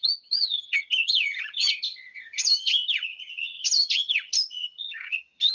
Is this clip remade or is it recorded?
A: remade